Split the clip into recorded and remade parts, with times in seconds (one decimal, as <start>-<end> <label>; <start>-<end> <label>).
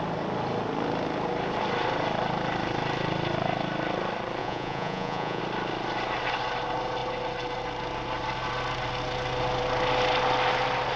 0.0-4.4 recorded; 4.4-5.4 remade; 5.4-11.0 recorded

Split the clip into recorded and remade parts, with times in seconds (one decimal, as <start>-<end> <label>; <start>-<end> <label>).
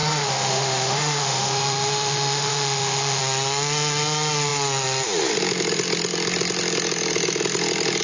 0.0-3.2 remade; 3.2-8.0 recorded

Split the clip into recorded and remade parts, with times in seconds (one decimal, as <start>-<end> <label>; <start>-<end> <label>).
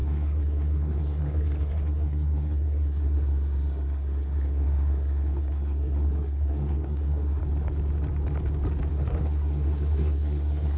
0.0-7.4 remade; 7.4-8.9 recorded; 8.9-10.8 remade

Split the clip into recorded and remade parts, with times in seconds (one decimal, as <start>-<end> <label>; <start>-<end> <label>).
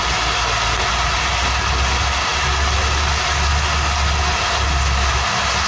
0.0-5.7 recorded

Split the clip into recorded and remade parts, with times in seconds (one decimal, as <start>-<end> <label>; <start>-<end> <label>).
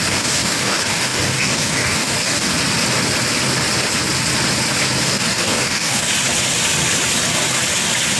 0.0-2.5 remade; 2.5-5.0 recorded; 5.0-6.1 remade; 6.1-8.2 recorded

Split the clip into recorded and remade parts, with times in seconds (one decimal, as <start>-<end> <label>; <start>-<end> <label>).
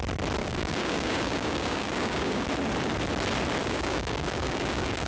0.0-0.4 recorded; 0.4-2.5 remade; 2.5-3.6 recorded; 3.6-5.1 remade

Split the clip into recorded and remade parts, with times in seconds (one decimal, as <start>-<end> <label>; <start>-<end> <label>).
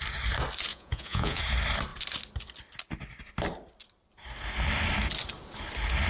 0.0-0.7 recorded; 0.7-1.4 remade; 1.4-6.1 recorded